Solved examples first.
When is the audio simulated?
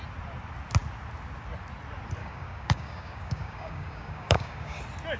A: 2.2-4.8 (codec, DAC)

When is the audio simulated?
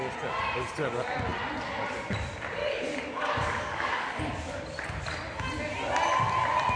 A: 2.6-4.2 (codec, DAC)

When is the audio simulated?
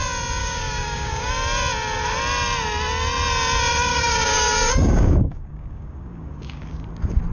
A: 0.4-1.3 (codec, DAC); 3.9-6.6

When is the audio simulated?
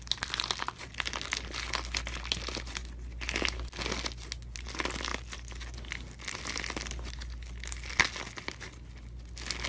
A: none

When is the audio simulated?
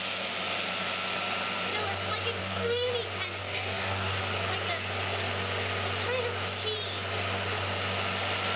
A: 2.4-2.9 (codec, DAC); 3.4-4.2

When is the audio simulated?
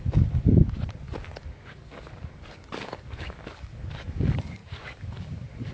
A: 0.0-0.6 (codec, DAC); 1.4-5.7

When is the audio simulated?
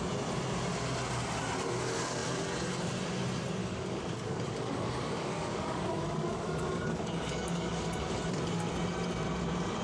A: 3.6-8.1 (codec, DAC)